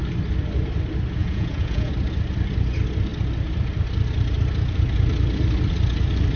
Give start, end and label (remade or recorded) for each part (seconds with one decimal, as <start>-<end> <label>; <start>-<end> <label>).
0.0-1.2 recorded; 1.2-1.9 remade; 1.9-6.4 recorded